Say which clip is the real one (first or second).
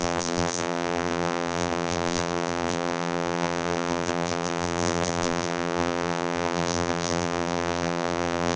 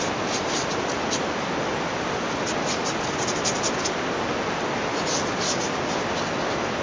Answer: second